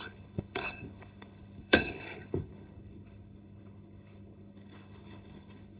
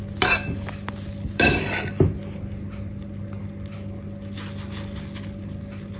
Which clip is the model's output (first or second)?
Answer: first